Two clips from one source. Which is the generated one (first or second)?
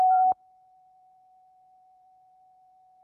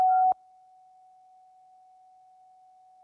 first